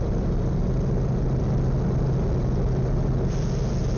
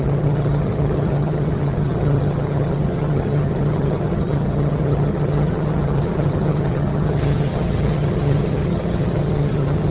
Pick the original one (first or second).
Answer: first